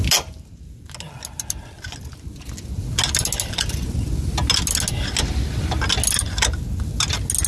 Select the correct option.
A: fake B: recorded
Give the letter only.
B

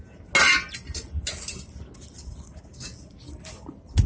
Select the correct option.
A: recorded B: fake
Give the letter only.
A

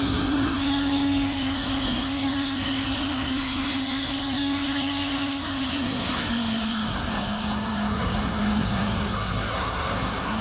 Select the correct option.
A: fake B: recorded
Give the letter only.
A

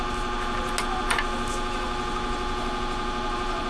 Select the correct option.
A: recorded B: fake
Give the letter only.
A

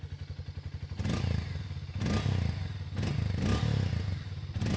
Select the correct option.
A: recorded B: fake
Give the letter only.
A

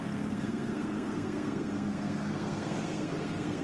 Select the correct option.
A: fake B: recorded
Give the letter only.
A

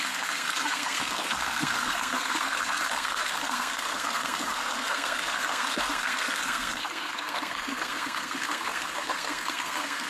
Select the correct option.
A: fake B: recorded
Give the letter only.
A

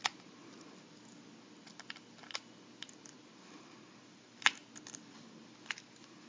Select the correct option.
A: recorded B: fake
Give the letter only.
A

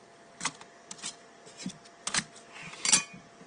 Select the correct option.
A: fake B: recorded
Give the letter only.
B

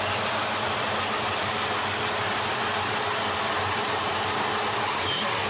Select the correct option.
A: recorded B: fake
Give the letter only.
A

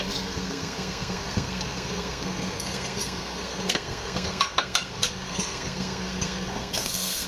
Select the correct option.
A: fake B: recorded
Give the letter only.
A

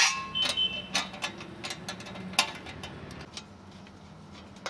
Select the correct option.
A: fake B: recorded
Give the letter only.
B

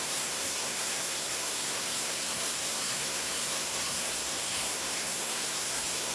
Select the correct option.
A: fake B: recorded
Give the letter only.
A